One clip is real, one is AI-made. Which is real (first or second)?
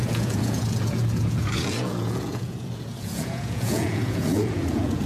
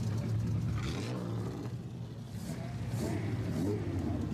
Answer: second